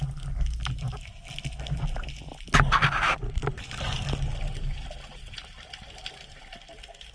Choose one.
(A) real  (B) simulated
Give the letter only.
A